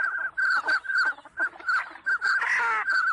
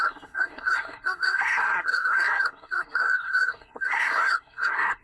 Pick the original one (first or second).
first